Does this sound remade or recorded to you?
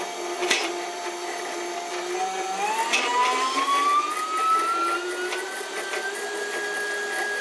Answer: recorded